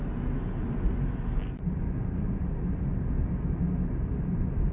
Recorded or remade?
recorded